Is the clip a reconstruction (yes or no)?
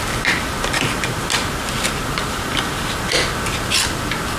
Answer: no